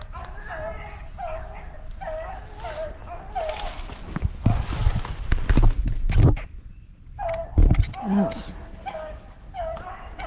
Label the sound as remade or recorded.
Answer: recorded